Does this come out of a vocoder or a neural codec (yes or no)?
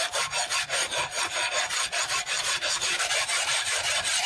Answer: yes